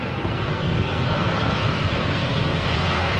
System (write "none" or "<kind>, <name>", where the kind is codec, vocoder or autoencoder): codec, SNAC